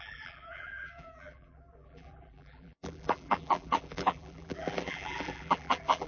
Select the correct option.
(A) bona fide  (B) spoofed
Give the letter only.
B